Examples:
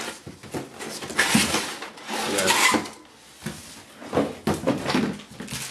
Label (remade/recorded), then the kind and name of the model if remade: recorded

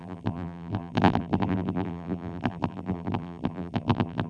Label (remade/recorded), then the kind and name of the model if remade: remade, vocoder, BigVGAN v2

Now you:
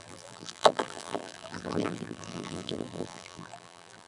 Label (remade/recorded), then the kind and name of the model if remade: remade, vocoder, BigVGAN v2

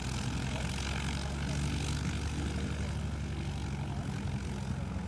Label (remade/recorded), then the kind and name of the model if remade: recorded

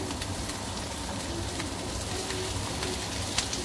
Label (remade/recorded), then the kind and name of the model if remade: recorded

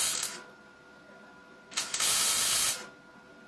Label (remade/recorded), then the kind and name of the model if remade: recorded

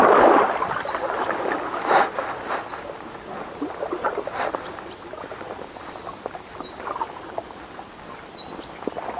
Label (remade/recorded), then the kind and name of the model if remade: recorded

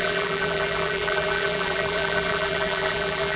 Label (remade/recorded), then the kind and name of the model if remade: remade, vocoder, BigVGAN v2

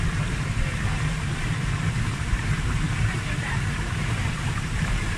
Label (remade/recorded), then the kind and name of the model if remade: remade, vocoder, BigVGAN v2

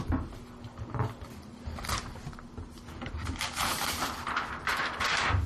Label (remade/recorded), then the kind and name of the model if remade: recorded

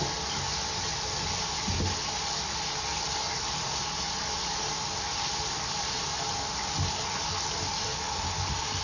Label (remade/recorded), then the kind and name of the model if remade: recorded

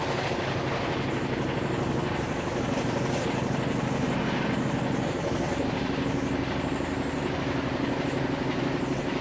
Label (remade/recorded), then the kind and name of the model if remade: recorded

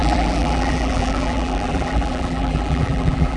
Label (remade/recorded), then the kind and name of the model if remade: remade, vocoder, BigVGAN v2